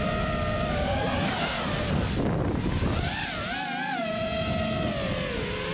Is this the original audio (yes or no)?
yes